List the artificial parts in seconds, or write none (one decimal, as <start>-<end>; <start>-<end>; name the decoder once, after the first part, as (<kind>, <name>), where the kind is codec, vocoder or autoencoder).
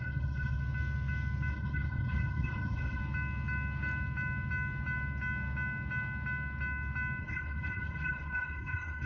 0.0-0.6 (codec, HILCodec); 1.5-3.0; 7.2-9.1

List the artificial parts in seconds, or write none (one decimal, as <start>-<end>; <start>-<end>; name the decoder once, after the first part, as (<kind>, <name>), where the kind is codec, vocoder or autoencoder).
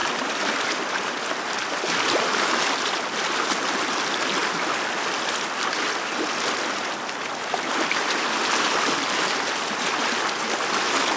0.0-1.2 (vocoder, BigVGAN v2)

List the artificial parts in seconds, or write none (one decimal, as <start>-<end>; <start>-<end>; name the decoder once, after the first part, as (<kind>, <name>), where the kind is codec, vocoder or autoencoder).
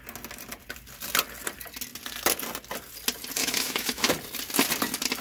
3.4-4.1 (autoencoder, DAC-VAE)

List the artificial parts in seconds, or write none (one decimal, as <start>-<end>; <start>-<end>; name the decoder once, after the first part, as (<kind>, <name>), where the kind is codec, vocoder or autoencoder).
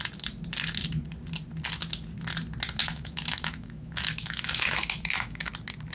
2.8-5.5 (autoencoder, DAC-VAE)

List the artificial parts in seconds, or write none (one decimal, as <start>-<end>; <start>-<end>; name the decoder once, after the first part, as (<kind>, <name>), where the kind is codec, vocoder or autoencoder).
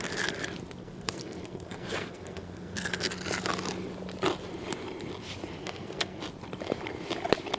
0.8-2.9 (codec, SNAC); 5.6-6.2